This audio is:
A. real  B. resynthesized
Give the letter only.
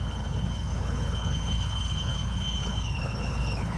B